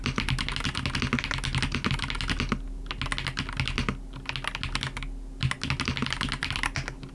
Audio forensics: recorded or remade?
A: recorded